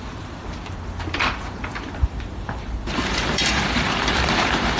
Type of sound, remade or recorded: remade